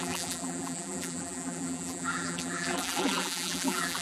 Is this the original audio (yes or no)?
no